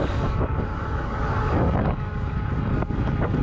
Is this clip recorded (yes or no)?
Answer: no